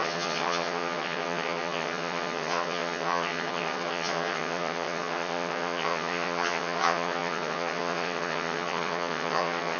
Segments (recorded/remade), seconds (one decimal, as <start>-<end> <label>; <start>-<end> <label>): 0.0-9.8 remade